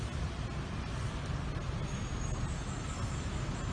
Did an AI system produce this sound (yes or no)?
no